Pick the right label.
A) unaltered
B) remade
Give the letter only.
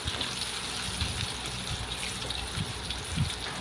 A